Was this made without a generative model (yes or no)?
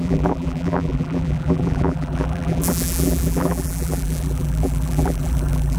no